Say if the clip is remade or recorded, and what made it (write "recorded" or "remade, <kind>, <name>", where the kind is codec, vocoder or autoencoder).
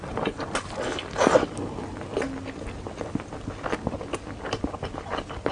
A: recorded